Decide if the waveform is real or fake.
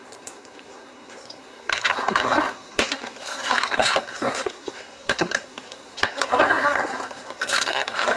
fake